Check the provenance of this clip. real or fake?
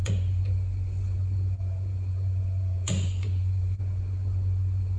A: fake